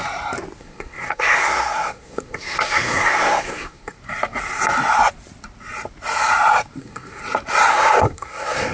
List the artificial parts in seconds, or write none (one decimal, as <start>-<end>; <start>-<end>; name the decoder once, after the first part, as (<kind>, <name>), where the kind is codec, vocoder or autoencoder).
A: 0.6-4.0 (codec, SNAC); 6.8-7.2; 7.7-8.7